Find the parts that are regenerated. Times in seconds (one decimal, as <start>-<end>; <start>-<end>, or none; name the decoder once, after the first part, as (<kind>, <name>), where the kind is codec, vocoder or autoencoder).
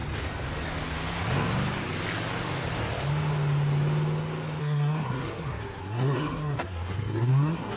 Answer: 4.6-7.8 (codec, SNAC)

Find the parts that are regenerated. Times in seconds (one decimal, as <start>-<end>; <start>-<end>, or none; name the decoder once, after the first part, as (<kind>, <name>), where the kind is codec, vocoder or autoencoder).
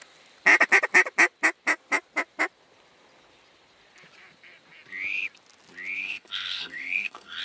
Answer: 6.0-7.4 (codec, SNAC)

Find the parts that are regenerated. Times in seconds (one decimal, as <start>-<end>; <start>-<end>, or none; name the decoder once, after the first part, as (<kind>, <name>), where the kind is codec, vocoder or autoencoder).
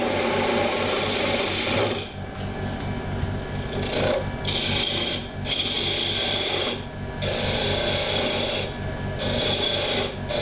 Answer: none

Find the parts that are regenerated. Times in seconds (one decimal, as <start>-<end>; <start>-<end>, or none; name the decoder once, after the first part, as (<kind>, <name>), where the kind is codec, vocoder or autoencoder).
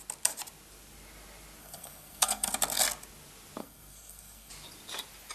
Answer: 1.6-2.5 (codec, SNAC); 3.6-4.5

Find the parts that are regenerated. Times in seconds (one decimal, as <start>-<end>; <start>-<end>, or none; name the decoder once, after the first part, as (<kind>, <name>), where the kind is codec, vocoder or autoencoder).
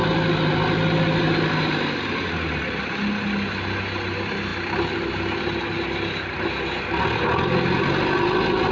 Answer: none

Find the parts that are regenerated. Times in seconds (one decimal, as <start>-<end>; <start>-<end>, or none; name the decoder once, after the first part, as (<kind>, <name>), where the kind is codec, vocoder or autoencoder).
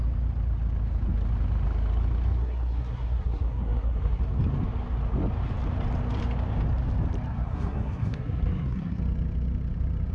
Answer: 2.4-4.2 (codec, SNAC); 7.3-9.0